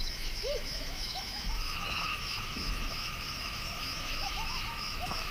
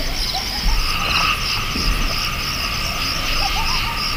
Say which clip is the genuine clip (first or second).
second